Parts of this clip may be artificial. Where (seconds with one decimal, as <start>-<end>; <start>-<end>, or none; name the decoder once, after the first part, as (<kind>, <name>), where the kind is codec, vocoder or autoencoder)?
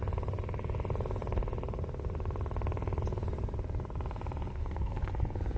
4.5-5.1 (codec, SNAC)